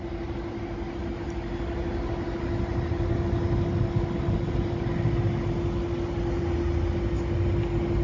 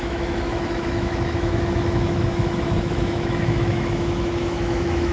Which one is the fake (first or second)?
second